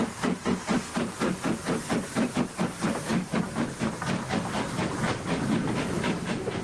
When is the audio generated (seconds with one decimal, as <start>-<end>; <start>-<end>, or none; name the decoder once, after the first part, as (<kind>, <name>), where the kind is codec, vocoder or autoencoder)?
none

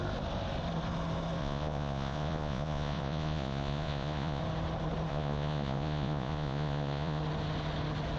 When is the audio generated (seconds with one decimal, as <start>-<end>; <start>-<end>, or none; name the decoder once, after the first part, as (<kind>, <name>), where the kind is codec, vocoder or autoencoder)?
1.4-4.4 (vocoder, Vocos); 5.1-7.2